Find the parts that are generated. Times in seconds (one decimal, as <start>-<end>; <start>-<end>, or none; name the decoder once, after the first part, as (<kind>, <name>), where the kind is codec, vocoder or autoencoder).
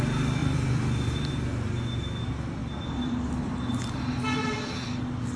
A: 0.4-1.3 (vocoder, BigVGAN v2); 2.6-4.9